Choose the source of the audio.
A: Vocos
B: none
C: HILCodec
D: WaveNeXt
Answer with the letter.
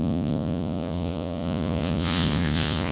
A